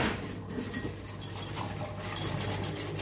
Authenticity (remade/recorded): recorded